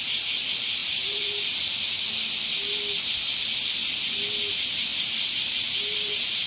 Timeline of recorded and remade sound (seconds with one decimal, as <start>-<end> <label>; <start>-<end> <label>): 0.0-0.8 recorded; 0.8-2.0 remade; 2.0-4.9 recorded; 4.9-6.5 remade